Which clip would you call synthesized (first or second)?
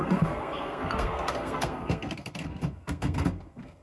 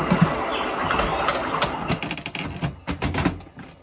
first